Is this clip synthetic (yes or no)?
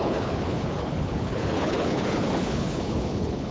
yes